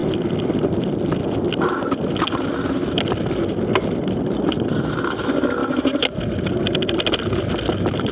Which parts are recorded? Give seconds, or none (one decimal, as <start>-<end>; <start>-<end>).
0.0-8.1